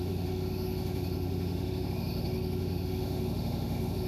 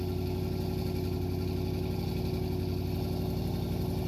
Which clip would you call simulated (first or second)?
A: first